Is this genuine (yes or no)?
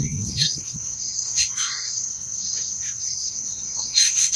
no